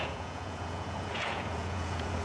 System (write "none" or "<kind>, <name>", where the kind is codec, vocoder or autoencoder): vocoder, Vocos